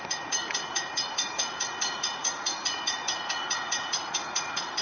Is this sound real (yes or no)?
no